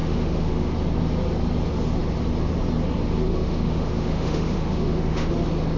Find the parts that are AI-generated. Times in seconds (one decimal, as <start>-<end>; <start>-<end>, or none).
0.0-0.7; 3.3-5.3